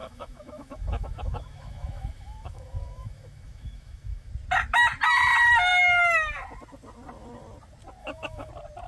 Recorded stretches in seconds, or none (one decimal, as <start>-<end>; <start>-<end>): 4.3-8.0; 8.5-8.9